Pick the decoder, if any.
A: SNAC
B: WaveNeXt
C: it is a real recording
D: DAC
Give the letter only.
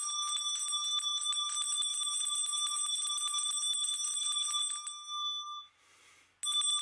C